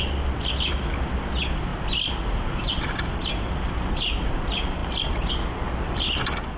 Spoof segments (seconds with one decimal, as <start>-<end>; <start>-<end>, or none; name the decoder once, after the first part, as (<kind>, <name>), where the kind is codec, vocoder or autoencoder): 4.8-5.3 (vocoder, BigVGAN v2)